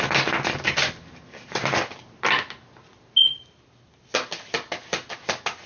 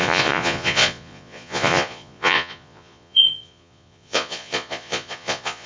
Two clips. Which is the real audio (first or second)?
first